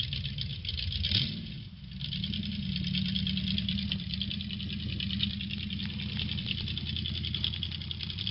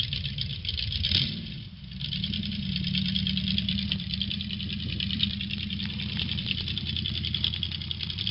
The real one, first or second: first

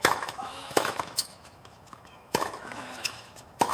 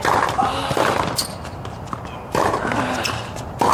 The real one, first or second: second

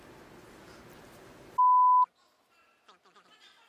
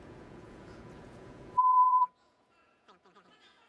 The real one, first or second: first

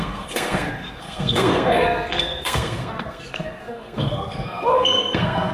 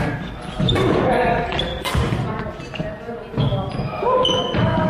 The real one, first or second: second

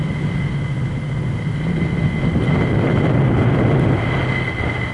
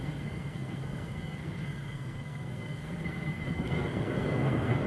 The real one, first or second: first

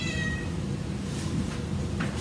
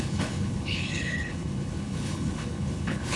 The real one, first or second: first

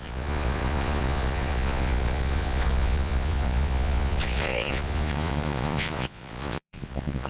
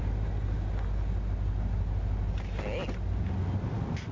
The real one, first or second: second